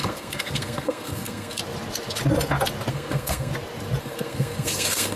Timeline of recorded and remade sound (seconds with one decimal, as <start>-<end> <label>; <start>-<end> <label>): 0.0-1.6 remade; 1.6-2.9 recorded; 2.9-3.5 remade; 3.5-4.0 recorded; 4.0-5.2 remade